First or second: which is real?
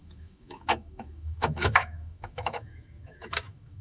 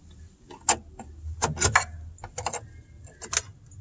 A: second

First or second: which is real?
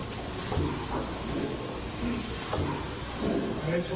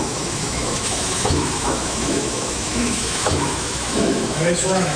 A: first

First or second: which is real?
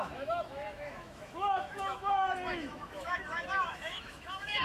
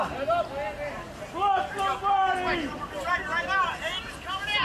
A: second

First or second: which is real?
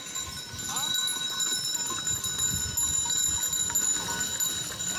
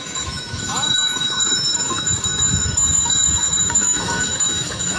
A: first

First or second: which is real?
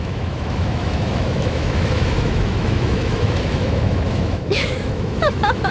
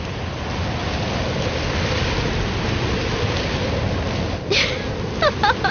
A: second